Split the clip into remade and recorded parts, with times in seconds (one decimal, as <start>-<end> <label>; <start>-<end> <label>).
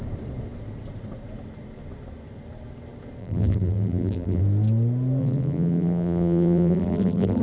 0.0-3.2 recorded; 3.2-4.4 remade; 4.4-5.2 recorded; 5.2-7.4 remade